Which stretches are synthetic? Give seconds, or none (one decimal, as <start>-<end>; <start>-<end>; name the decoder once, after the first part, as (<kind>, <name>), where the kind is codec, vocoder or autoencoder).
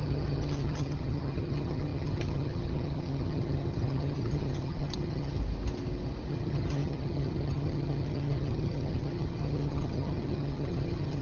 0.0-5.4 (vocoder, HiFi-GAN); 6.3-11.2